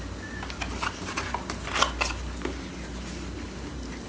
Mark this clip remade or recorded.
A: recorded